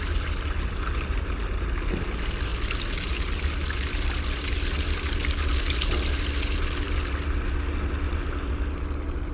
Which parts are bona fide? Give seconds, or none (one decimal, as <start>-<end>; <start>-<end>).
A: 0.0-9.3